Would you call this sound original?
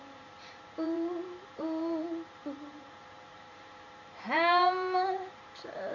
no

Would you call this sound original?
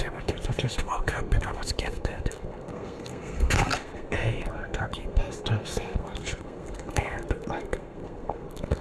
no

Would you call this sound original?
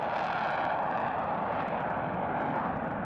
yes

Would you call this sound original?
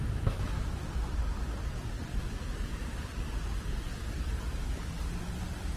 yes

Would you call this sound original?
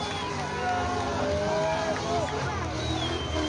yes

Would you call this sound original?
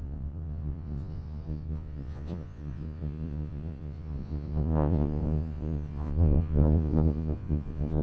no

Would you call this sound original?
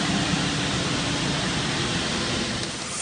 yes